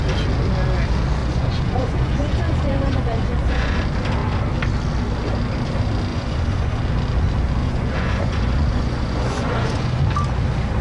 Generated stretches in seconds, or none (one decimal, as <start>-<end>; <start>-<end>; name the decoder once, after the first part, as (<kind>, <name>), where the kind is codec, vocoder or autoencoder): 1.2-3.8 (vocoder, Vocos); 6.1-6.8; 7.6-10.0